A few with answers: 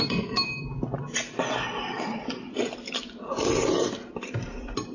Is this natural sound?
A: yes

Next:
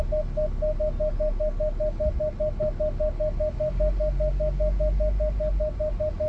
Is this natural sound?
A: yes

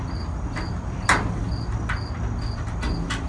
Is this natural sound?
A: yes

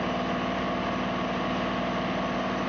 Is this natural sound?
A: yes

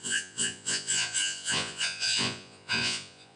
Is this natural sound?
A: no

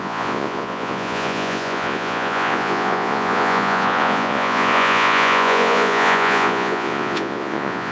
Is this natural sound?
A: no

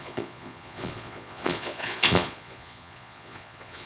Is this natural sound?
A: no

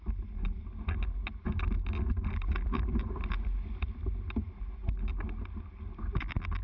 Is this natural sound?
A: yes